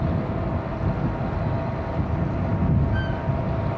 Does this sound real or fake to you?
real